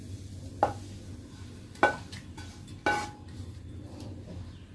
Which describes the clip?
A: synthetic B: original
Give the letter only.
B